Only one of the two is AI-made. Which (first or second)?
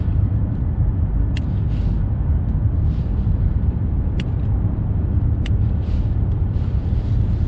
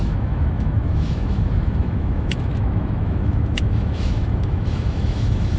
second